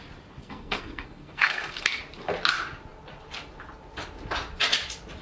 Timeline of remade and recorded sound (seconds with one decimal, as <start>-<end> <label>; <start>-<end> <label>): 0.0-0.4 recorded; 0.4-2.0 remade; 2.0-5.2 recorded